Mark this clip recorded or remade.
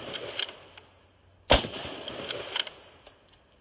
recorded